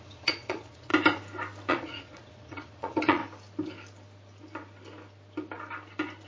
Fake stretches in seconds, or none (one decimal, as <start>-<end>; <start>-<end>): 0.0-0.9; 1.7-3.2